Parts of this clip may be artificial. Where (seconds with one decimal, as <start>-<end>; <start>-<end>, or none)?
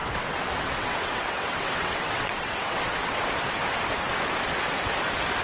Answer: 0.0-3.2